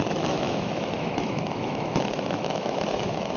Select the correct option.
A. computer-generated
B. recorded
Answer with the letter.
A